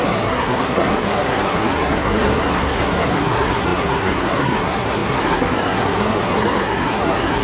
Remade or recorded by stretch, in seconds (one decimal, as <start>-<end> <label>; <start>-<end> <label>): 0.0-7.4 remade